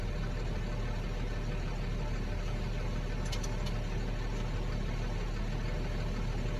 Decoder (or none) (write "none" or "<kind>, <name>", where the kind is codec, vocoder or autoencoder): none